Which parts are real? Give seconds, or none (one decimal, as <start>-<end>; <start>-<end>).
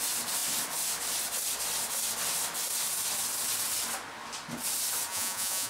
0.0-5.1